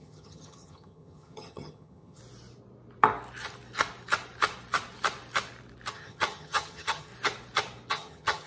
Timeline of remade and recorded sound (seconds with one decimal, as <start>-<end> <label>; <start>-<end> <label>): 0.0-2.2 remade; 2.2-5.9 recorded; 5.9-7.1 remade; 7.1-7.9 recorded; 7.9-8.5 remade